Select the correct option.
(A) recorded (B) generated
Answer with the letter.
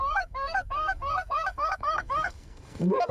B